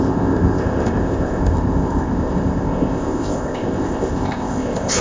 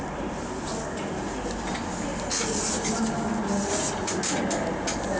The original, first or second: second